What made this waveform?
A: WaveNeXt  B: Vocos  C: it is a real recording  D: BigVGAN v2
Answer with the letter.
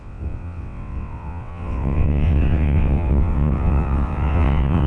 A